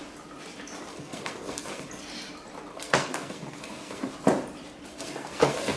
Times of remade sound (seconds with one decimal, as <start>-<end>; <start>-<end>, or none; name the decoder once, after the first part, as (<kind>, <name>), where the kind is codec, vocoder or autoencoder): 0.9-1.9 (codec, SNAC); 2.7-4.1; 4.9-5.8